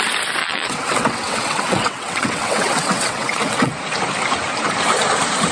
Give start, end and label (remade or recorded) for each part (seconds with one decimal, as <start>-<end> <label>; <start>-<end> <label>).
0.0-0.4 recorded; 0.4-3.7 remade; 3.7-5.5 recorded